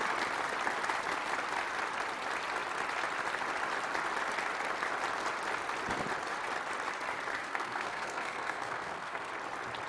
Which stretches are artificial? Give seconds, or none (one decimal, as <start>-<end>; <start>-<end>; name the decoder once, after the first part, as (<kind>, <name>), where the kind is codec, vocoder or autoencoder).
7.4-9.3 (codec, SNAC)